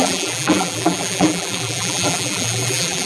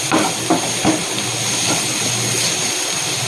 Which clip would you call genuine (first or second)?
second